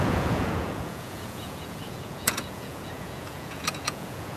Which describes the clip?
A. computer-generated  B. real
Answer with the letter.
A